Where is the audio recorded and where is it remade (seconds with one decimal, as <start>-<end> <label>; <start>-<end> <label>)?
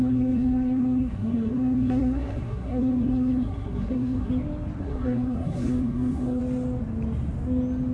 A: 0.0-4.3 remade; 4.3-4.8 recorded; 4.8-6.4 remade; 6.4-7.9 recorded